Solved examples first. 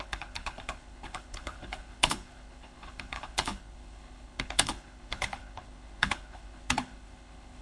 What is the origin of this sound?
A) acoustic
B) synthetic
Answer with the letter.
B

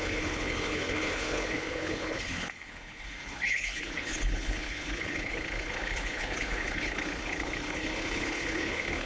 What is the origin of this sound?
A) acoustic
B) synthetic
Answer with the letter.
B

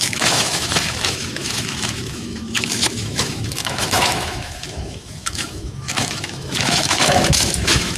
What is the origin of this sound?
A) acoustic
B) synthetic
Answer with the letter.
B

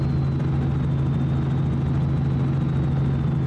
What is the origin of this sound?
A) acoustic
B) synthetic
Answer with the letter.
A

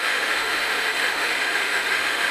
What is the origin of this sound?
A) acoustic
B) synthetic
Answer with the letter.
B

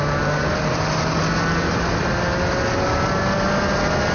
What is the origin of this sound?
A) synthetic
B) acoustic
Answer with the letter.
B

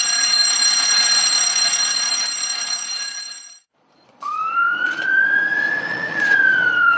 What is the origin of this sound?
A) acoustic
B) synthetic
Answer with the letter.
B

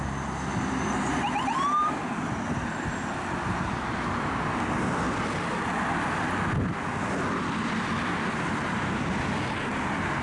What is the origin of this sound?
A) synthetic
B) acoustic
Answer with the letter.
B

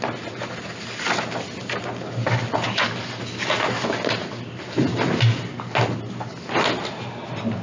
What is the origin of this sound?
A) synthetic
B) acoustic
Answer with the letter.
B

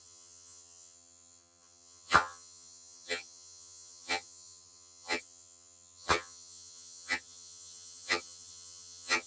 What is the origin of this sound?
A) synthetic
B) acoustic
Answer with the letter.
A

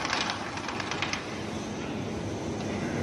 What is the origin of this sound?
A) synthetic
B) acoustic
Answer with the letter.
B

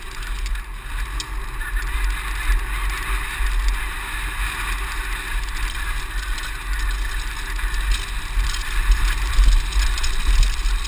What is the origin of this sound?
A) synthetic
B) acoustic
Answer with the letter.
B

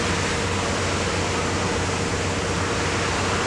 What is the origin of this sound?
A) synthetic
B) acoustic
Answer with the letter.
B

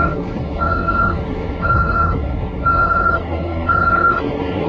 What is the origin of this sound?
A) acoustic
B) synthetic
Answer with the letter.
B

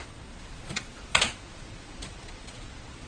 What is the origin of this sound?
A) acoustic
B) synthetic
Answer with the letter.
B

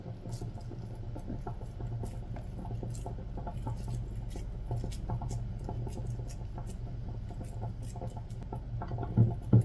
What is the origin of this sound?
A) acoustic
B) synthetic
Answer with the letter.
A